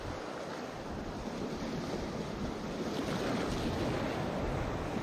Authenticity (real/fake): real